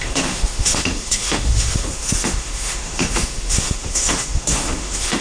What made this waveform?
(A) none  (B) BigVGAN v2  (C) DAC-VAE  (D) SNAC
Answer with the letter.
C